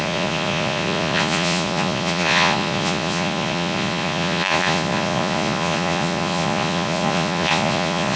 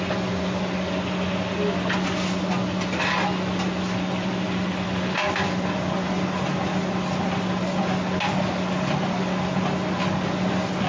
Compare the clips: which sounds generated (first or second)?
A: first